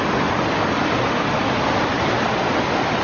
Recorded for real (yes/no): yes